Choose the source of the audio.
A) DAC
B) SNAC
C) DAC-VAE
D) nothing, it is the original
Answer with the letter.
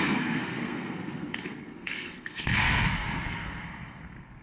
B